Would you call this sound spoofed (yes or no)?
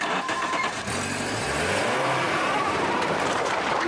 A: yes